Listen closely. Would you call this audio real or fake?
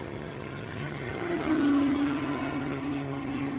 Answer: fake